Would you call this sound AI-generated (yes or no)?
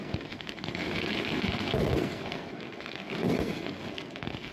yes